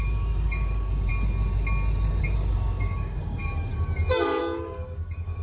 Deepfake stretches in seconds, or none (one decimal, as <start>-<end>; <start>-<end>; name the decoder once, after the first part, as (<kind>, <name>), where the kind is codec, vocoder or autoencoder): 0.0-1.1 (codec, DAC); 2.2-3.7; 4.4-5.4